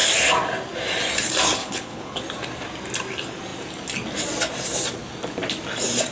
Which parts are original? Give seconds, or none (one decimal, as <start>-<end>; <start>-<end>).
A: 0.0-1.6; 2.2-6.1